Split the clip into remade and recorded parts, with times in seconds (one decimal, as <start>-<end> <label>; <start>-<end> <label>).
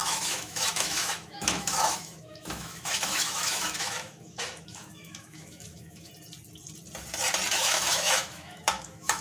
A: 0.0-6.1 remade; 6.1-7.6 recorded; 7.6-9.2 remade